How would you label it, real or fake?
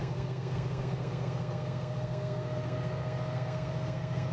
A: fake